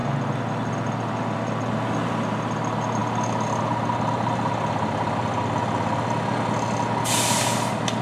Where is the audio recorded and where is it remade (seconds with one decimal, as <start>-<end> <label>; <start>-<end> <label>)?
0.0-8.0 recorded